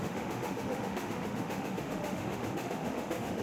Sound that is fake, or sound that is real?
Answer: fake